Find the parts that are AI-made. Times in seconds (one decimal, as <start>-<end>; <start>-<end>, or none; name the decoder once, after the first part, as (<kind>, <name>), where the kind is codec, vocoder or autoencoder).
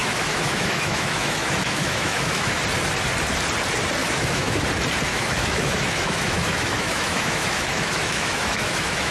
0.0-2.6 (autoencoder, DAC-VAE); 4.0-4.6; 5.1-9.1